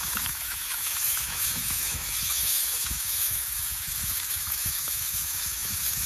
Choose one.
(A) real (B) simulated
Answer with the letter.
B